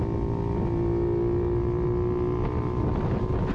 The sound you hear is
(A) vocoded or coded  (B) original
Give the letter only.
B